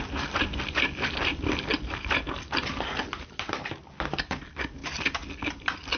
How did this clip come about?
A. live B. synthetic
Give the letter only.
A